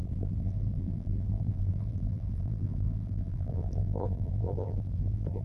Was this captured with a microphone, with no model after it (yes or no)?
no